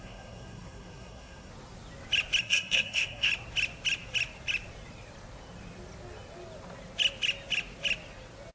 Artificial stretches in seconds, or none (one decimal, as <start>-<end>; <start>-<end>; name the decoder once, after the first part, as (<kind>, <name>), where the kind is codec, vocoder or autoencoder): 0.0-1.5 (codec, SNAC); 2.4-3.3